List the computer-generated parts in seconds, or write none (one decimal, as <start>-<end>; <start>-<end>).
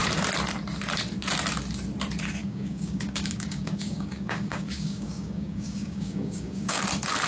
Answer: 2.4-6.8